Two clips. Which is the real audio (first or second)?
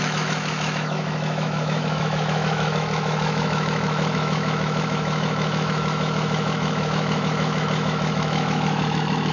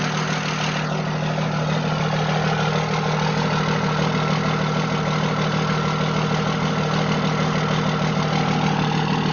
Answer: second